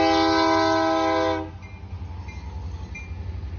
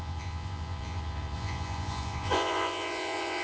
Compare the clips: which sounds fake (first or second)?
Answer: second